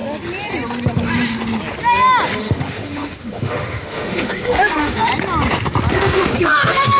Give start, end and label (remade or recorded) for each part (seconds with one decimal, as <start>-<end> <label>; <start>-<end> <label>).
0.0-2.4 recorded; 2.4-5.1 remade; 5.1-5.9 recorded; 5.9-7.0 remade